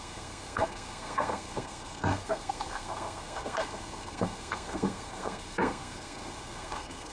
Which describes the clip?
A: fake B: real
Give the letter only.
A